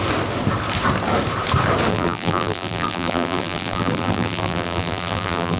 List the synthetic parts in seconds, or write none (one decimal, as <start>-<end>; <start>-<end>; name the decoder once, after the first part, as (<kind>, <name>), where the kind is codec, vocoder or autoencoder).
1.9-5.6 (vocoder, BigVGAN v2)